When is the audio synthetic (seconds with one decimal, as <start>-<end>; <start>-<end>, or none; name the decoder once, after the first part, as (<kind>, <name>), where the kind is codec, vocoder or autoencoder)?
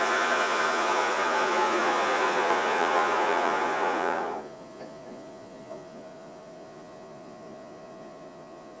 0.0-8.8 (vocoder, Vocos)